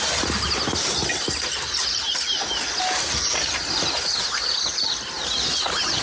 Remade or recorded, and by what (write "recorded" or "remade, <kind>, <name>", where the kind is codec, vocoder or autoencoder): recorded